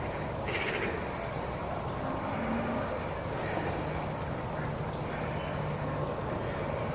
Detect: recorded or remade recorded